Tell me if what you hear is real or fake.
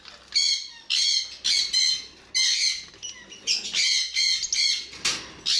real